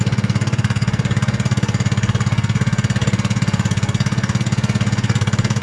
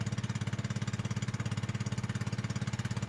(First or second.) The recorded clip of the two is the second